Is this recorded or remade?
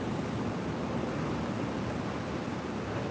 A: recorded